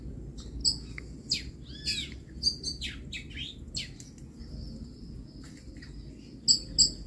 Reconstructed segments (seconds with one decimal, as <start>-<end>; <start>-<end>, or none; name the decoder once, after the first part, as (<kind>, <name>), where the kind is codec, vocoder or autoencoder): none